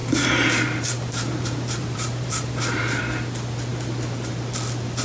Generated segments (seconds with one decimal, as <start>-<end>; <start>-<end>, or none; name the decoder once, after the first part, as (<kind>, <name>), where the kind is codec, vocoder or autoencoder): 0.0-3.0 (vocoder, BigVGAN v2)